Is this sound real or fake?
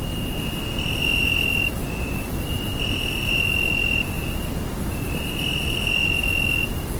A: real